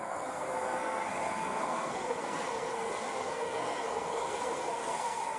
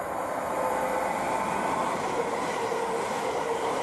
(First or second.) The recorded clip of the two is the second